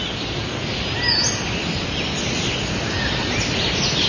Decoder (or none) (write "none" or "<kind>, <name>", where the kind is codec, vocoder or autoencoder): none